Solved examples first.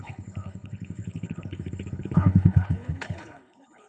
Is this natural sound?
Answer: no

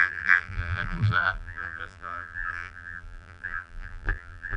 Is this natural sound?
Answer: no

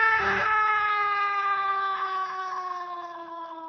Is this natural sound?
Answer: no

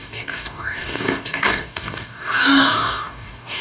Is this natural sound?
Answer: no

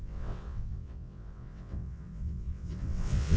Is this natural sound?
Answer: no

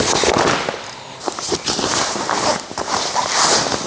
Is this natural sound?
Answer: yes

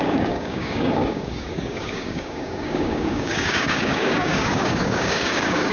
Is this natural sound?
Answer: no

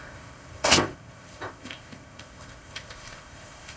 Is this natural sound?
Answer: no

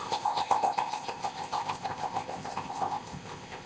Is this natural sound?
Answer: no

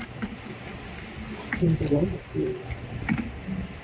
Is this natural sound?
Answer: yes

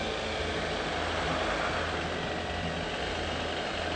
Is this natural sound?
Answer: yes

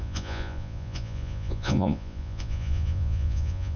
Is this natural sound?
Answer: no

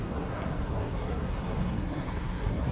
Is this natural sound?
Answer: no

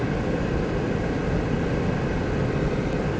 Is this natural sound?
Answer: yes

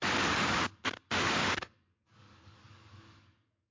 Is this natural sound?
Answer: no